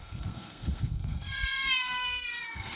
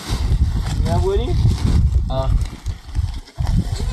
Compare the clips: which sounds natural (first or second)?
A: second